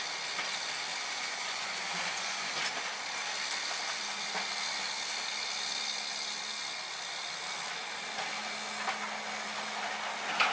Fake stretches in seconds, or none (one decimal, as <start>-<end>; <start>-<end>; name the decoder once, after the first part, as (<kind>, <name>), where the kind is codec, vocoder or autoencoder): 0.9-2.5 (vocoder, Vocos)